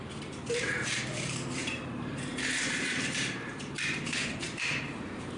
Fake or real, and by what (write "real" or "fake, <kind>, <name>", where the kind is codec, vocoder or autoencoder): fake, vocoder, BigVGAN v2